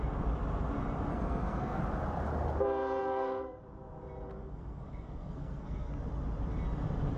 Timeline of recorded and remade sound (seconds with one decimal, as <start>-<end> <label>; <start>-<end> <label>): 0.0-1.1 recorded; 1.1-1.8 remade; 1.8-3.0 recorded; 3.0-3.6 remade; 3.6-4.3 recorded; 4.3-6.0 remade; 6.0-7.2 recorded